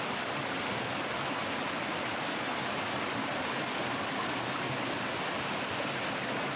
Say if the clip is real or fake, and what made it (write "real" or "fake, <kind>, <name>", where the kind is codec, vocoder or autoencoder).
real